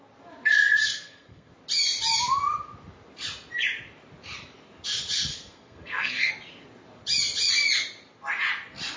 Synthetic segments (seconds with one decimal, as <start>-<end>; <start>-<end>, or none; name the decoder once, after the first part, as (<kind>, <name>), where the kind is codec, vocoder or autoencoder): 0.8-1.5 (codec, SNAC); 5.3-6.3